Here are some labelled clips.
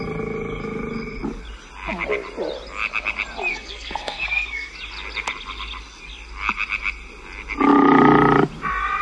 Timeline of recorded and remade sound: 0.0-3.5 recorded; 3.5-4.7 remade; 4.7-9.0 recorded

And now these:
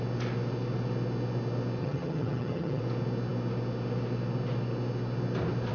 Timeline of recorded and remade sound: 0.0-1.8 recorded; 1.8-2.8 remade; 2.8-5.7 recorded

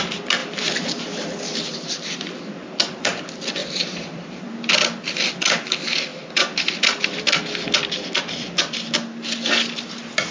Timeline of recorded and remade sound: 0.0-0.4 recorded; 0.4-1.4 remade; 1.4-3.6 recorded; 3.6-4.5 remade; 4.5-10.3 recorded

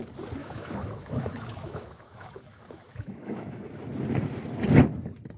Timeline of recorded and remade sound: 0.0-0.4 recorded; 0.4-3.6 remade; 3.6-5.4 recorded

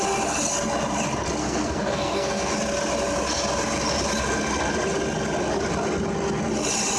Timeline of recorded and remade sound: 0.0-1.4 recorded; 1.4-2.5 remade; 2.5-7.0 recorded